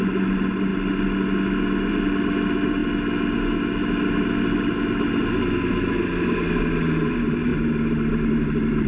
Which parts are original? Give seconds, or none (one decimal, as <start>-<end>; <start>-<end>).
0.0-8.9